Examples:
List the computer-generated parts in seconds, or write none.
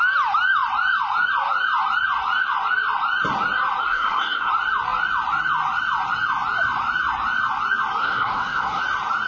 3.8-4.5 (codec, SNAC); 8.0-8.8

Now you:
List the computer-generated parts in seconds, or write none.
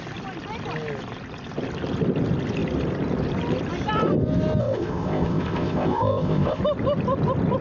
4.6-6.6 (codec, ZipCodec)